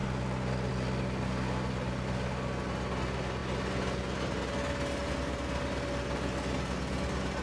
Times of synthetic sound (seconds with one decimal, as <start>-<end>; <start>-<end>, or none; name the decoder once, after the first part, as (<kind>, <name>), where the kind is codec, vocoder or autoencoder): none